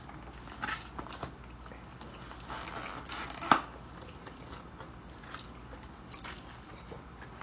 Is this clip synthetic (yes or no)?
no